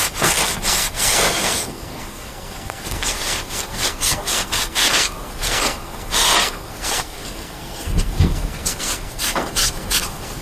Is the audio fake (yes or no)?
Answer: yes